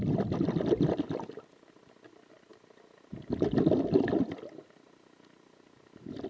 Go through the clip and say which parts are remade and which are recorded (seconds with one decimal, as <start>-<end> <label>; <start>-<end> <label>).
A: 0.0-6.3 recorded